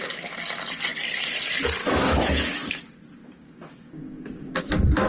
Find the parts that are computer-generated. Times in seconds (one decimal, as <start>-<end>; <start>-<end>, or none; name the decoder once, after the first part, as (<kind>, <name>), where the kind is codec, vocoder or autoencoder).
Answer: 1.8-2.7 (autoencoder, DAC-VAE); 3.2-4.6